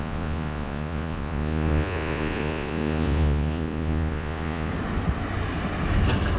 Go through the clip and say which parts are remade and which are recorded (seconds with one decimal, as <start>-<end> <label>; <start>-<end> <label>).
0.0-4.7 remade; 4.7-6.4 recorded